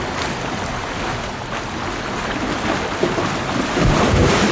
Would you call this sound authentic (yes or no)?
yes